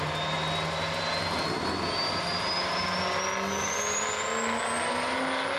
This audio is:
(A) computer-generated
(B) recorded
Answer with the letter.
B